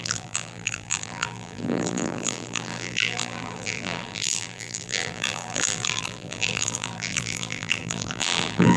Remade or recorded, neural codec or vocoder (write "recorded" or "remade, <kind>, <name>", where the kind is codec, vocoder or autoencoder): remade, vocoder, BigVGAN v2